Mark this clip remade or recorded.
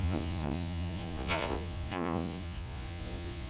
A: remade